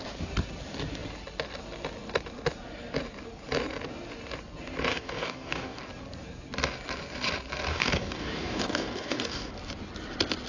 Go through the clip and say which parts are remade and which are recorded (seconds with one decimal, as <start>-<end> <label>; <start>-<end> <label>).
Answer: 0.0-4.9 recorded; 4.9-5.8 remade; 5.8-7.7 recorded; 7.7-9.5 remade; 9.5-10.5 recorded